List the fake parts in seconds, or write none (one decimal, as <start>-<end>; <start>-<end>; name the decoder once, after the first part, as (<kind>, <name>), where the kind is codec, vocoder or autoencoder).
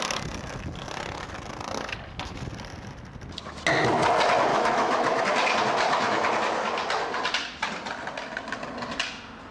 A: 4.5-5.2 (autoencoder, DAC-VAE)